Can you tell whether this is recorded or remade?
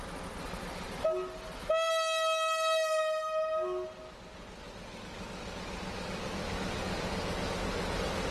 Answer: recorded